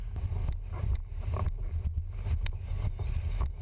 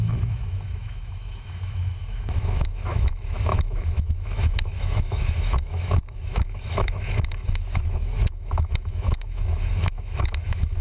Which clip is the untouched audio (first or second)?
first